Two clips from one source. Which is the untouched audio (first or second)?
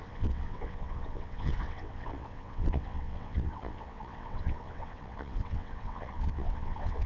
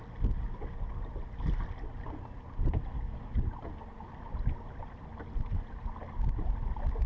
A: second